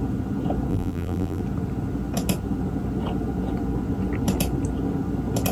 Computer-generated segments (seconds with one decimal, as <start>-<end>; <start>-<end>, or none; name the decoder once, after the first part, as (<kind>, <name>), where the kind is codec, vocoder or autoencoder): 0.7-1.4 (vocoder, BigVGAN v2)